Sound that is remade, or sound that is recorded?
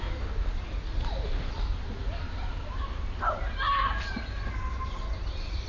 recorded